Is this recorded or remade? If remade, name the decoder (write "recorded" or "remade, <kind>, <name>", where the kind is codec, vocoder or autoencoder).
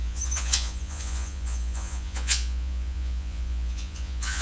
remade, vocoder, Vocos